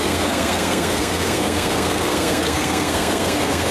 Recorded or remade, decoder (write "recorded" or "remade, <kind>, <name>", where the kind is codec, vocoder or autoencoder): remade, codec, SNAC